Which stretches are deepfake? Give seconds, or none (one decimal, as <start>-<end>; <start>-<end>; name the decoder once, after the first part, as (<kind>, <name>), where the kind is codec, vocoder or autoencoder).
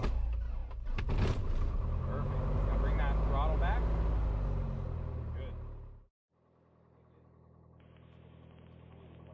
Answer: none